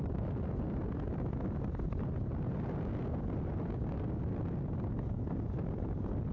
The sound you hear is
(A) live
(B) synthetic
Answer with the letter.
A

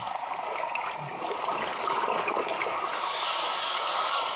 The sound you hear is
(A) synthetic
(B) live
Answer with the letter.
A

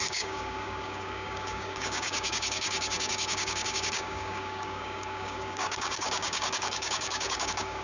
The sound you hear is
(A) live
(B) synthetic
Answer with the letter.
B